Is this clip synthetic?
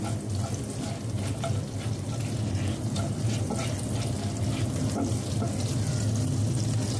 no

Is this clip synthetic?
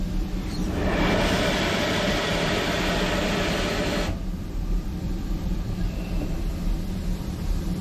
yes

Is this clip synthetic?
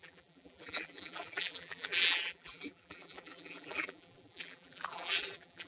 yes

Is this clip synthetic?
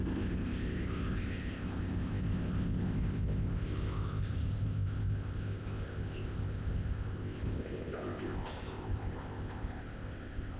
yes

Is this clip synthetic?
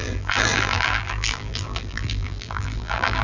yes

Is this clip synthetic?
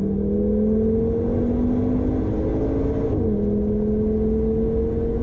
no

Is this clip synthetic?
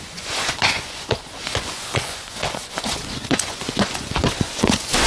yes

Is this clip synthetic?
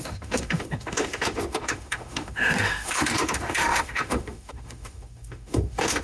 yes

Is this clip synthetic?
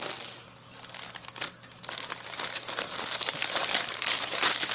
no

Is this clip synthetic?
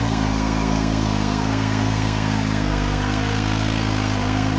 yes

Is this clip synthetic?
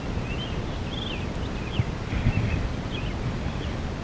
no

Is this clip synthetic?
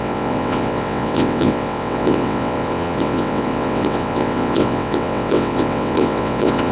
yes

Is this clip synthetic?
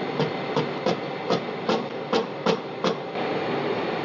no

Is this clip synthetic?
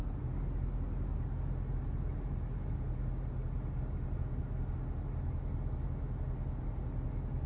no